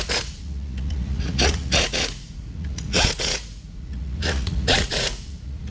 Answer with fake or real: fake